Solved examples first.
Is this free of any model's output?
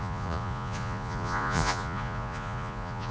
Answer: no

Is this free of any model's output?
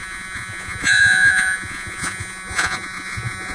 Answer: no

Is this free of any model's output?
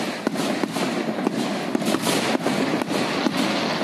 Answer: yes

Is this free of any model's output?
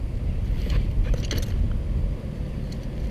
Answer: yes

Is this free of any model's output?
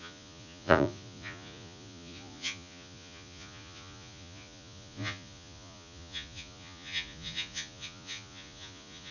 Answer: no